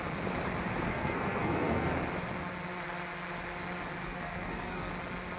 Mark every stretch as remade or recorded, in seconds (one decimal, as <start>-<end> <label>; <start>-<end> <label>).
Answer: 0.0-0.9 recorded; 0.9-1.9 remade; 1.9-4.0 recorded; 4.0-4.9 remade; 4.9-5.4 recorded